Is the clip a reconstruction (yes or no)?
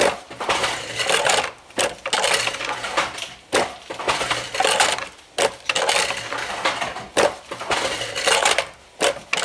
no